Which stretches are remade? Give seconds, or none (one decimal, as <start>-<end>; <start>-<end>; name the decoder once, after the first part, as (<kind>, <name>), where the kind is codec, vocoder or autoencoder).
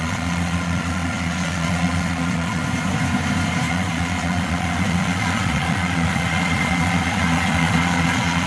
0.0-2.6 (vocoder, Vocos); 3.7-8.5